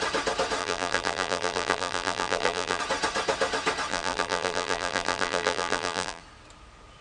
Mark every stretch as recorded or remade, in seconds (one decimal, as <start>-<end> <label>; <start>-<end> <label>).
0.0-0.6 recorded; 0.6-2.8 remade; 2.8-3.9 recorded; 3.9-6.2 remade; 6.2-7.0 recorded

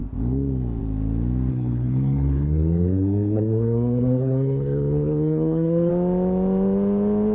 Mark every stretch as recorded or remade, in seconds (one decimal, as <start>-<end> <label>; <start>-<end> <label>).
0.0-1.5 recorded; 1.5-5.9 remade; 5.9-7.3 recorded

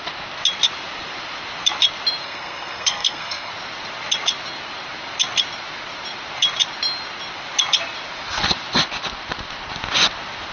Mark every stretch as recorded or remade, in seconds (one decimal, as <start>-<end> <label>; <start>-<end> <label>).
0.0-2.2 recorded; 2.2-3.5 remade; 3.5-10.5 recorded

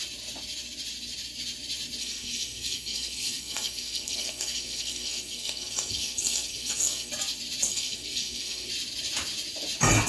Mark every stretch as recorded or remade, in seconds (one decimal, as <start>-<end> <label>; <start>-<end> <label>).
0.0-2.0 recorded; 2.0-7.1 remade; 7.1-7.7 recorded; 7.7-8.7 remade; 8.7-10.1 recorded